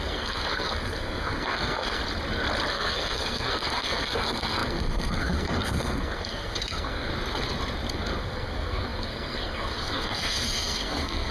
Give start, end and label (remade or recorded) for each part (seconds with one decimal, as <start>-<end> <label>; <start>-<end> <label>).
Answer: 0.0-2.0 remade; 2.0-2.7 recorded; 2.7-7.1 remade; 7.1-7.9 recorded; 7.9-11.3 remade